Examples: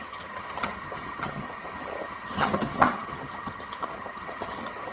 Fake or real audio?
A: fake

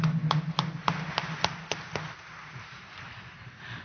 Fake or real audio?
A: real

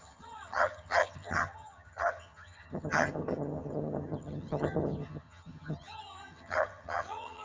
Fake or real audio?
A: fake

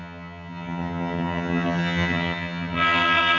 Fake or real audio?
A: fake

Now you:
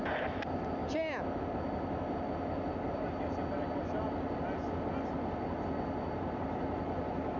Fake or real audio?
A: real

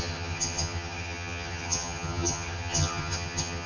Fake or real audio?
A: fake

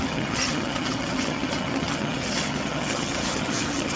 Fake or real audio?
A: fake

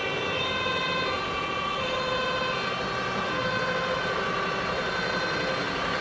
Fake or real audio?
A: real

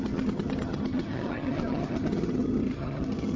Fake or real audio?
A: fake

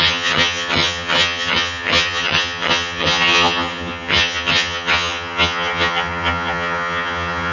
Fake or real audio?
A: fake